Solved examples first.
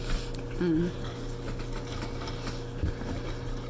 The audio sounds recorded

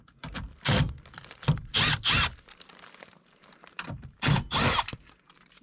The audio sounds recorded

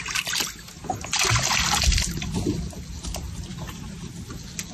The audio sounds recorded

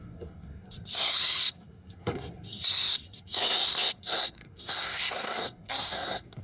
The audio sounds remade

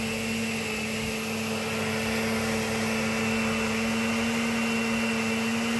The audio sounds recorded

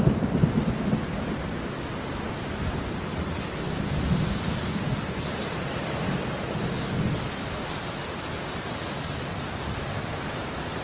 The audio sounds recorded